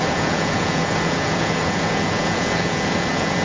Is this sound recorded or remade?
remade